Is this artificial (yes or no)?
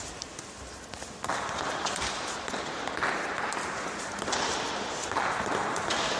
no